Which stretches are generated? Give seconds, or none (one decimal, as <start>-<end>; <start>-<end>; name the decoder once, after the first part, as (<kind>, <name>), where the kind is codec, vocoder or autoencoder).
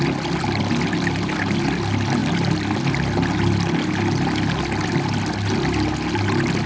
none